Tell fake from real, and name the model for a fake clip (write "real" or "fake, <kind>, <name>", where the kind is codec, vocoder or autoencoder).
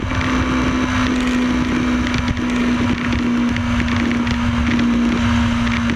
real